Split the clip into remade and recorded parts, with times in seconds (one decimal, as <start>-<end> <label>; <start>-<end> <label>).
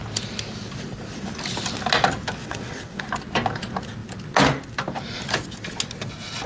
0.0-2.4 recorded; 2.4-3.0 remade; 3.0-6.5 recorded